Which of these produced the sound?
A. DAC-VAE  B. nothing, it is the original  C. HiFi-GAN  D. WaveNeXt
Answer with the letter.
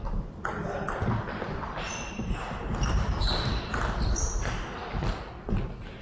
B